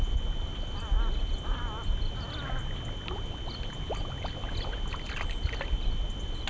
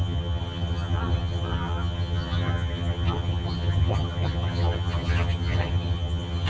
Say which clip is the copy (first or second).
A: second